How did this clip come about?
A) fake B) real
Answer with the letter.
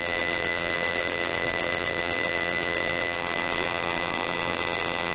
A